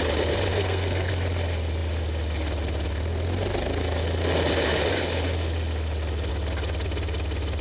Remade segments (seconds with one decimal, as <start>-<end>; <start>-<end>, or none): 0.5-1.1